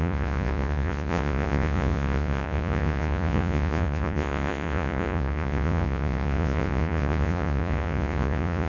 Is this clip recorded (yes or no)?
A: no